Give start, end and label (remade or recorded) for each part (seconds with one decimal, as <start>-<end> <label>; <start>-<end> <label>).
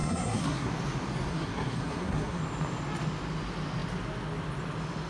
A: 0.0-0.7 remade; 0.7-1.3 recorded; 1.3-2.4 remade; 2.4-5.1 recorded